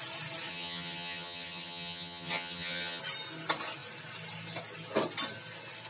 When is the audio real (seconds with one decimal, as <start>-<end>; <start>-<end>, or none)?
0.0-0.5; 3.0-5.9